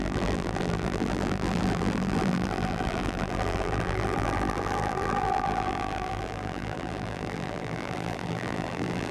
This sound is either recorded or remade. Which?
remade